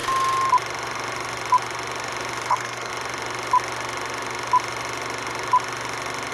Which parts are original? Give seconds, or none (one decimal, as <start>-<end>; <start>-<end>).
0.0-2.5; 2.9-6.3